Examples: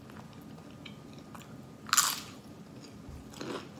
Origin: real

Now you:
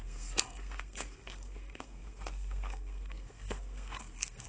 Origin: fake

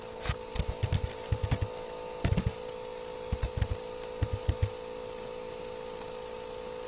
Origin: real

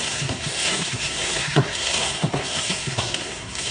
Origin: fake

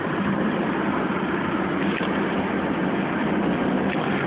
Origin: real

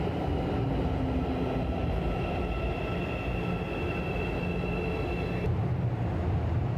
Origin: real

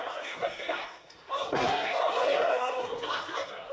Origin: fake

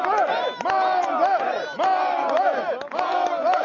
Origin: real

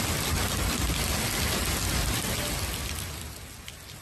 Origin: real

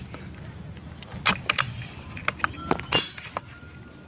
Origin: real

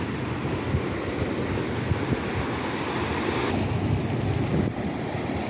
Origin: real